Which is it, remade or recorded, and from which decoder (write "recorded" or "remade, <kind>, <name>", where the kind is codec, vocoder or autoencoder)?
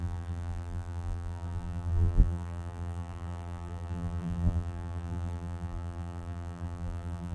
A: remade, vocoder, BigVGAN v2